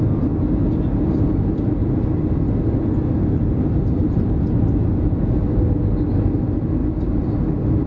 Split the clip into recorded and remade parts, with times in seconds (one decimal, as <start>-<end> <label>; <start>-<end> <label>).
0.0-1.8 recorded; 1.8-2.4 remade; 2.4-4.0 recorded; 4.0-5.7 remade; 5.7-7.9 recorded